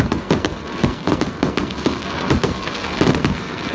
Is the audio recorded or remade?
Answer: remade